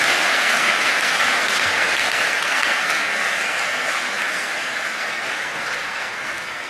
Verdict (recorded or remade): remade